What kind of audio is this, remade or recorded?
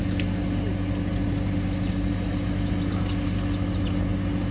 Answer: recorded